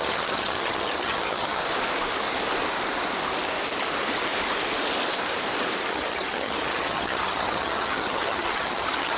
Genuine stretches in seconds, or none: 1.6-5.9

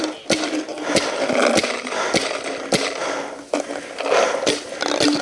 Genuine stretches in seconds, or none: 0.0-5.2